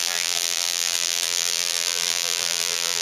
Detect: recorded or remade remade